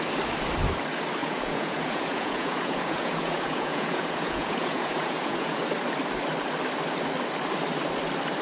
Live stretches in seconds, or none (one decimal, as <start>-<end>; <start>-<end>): 0.0-1.2; 5.6-8.4